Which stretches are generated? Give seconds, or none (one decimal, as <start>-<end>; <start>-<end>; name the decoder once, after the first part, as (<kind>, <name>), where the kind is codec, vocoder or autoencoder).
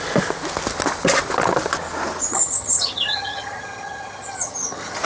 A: 2.3-5.0 (vocoder, HiFi-GAN)